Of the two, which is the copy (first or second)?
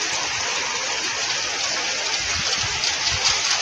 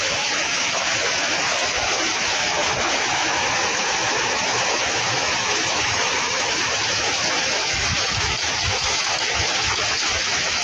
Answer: second